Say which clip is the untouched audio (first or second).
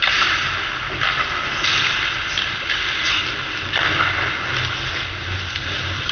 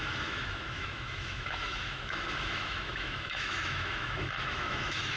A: first